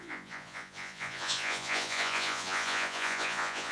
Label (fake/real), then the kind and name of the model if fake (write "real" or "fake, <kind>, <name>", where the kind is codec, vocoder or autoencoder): fake, vocoder, Vocos